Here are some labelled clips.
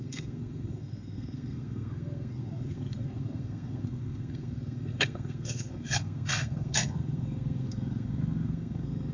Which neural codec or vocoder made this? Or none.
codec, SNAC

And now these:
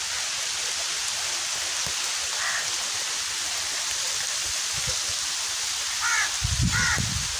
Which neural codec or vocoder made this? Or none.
none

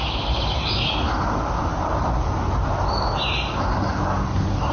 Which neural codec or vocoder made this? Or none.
none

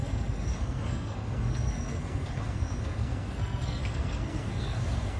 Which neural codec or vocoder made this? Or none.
codec, SNAC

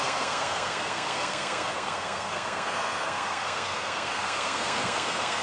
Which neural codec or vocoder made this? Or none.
codec, SNAC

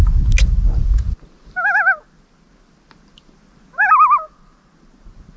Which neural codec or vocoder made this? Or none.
none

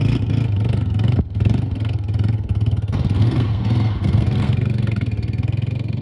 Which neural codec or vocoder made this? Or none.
codec, SNAC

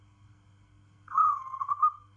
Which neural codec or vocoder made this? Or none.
codec, SNAC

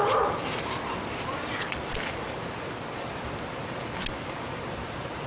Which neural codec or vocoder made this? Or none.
none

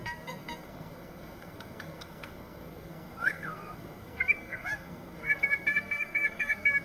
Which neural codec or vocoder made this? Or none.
codec, SNAC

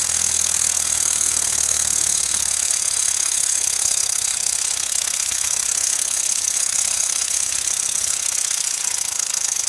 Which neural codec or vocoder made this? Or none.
codec, SNAC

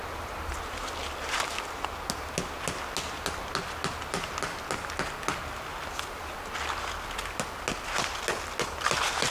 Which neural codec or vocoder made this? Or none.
none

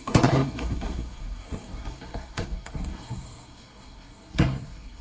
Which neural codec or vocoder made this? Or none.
codec, SNAC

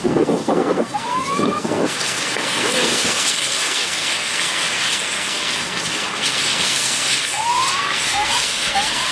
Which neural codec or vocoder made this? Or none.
codec, SNAC